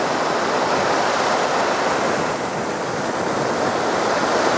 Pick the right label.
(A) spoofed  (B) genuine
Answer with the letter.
B